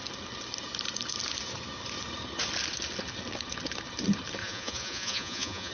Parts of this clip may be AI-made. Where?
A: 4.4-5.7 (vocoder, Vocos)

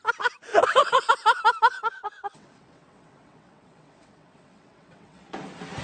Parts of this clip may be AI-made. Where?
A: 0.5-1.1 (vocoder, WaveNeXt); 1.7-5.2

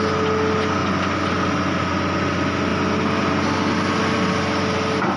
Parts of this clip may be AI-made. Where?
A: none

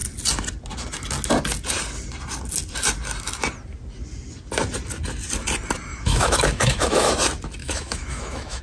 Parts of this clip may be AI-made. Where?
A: 5.9-7.1 (autoencoder, DAC-VAE); 7.6-8.6

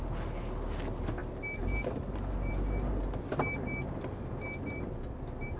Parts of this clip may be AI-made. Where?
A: none

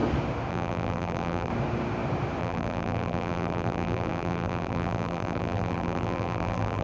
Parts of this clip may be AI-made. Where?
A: 0.5-1.5 (vocoder, BigVGAN v2); 2.4-6.8

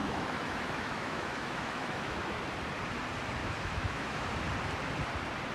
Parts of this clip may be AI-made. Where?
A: 0.0-2.4 (autoencoder, DAC-VAE); 3.4-4.3

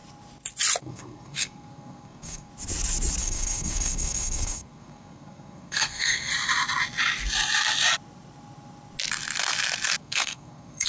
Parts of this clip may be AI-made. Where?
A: 0.8-2.5 (codec, SNAC); 3.2-6.3; 10.0-10.9